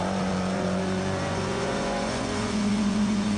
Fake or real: fake